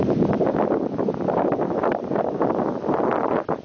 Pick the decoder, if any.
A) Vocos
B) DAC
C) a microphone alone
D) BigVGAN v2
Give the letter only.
C